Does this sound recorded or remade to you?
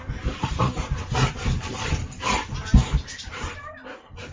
remade